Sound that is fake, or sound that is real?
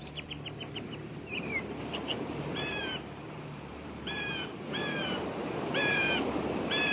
fake